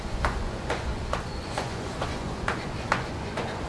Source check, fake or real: fake